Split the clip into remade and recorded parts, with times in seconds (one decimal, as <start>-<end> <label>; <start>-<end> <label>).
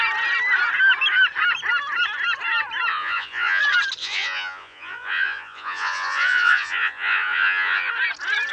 0.0-2.9 recorded; 2.9-3.6 remade; 3.6-4.0 recorded; 4.0-7.9 remade; 7.9-8.5 recorded